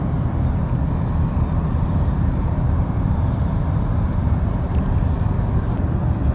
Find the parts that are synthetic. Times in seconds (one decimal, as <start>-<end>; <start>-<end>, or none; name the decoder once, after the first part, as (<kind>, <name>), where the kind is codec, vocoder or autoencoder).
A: 2.1-4.8 (vocoder, BigVGAN v2)